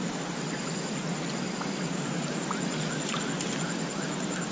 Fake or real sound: real